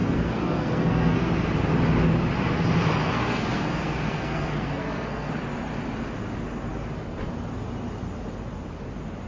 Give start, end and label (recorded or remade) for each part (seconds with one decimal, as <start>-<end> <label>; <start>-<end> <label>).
0.0-1.3 remade; 1.3-3.0 recorded; 3.0-5.3 remade; 5.3-9.3 recorded

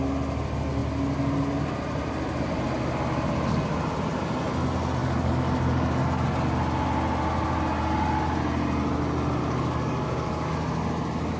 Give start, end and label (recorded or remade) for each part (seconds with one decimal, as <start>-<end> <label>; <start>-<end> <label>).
0.0-5.0 recorded; 5.0-6.0 remade; 6.0-9.4 recorded; 9.4-10.5 remade; 10.5-11.4 recorded

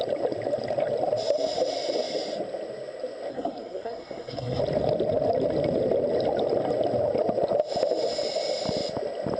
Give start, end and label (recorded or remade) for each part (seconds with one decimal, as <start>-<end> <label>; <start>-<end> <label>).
0.0-3.3 recorded; 3.3-4.6 remade; 4.6-9.4 recorded

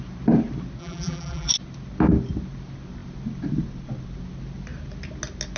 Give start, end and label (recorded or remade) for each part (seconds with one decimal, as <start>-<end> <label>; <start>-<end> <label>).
0.0-0.8 recorded; 0.8-1.5 remade; 1.5-5.6 recorded

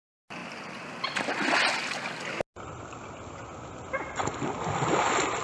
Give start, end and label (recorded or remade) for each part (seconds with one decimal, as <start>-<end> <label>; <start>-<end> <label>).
0.0-5.4 recorded